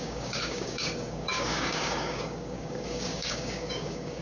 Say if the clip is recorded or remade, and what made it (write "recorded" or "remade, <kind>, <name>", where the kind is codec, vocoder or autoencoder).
remade, codec, DAC